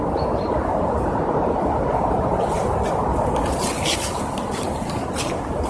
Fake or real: real